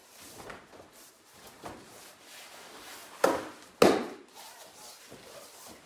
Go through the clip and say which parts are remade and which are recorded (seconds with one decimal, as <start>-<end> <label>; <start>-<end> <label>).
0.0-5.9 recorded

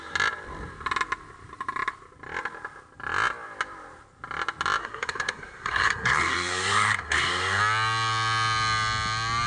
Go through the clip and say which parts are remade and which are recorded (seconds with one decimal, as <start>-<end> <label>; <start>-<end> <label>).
0.0-4.8 recorded; 4.8-7.6 remade; 7.6-9.5 recorded

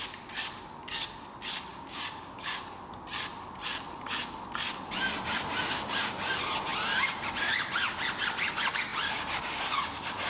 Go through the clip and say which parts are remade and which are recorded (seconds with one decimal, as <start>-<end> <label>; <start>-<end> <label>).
0.0-1.7 recorded; 1.7-2.5 remade; 2.5-10.3 recorded

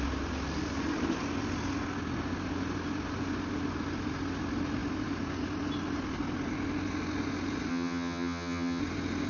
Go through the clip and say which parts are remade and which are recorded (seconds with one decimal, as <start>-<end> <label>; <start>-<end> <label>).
0.0-7.7 recorded; 7.7-8.8 remade; 8.8-9.3 recorded

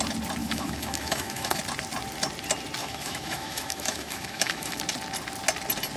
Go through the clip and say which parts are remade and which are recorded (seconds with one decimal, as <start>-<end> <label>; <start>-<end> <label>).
0.0-0.4 recorded; 0.4-1.6 remade; 1.6-2.8 recorded; 2.8-4.8 remade; 4.8-6.0 recorded

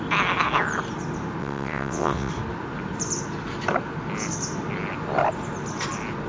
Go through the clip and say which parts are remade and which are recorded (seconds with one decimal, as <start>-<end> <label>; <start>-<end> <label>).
0.0-1.4 recorded; 1.4-2.3 remade; 2.3-6.3 recorded